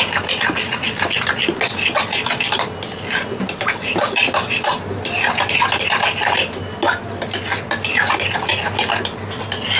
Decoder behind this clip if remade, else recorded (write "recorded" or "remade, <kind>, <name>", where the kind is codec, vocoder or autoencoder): recorded